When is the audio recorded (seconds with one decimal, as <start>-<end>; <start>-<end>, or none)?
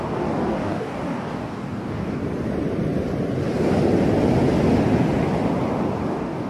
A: 2.2-6.1